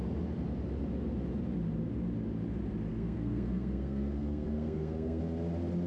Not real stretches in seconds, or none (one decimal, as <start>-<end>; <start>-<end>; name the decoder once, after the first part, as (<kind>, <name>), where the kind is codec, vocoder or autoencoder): 2.9-5.2 (codec, SNAC)